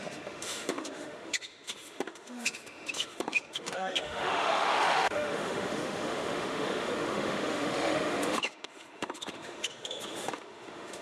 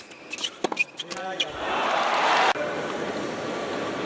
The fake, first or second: first